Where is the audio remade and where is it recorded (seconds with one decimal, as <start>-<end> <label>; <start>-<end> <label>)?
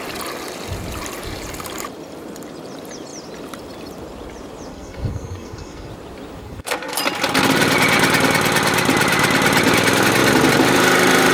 0.0-4.7 recorded; 4.7-5.9 remade; 5.9-6.4 recorded; 6.4-7.0 remade; 7.0-11.3 recorded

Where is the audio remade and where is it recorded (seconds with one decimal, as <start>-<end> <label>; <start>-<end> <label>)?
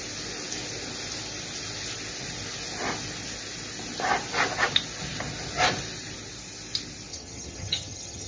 0.0-7.1 recorded; 7.1-8.3 remade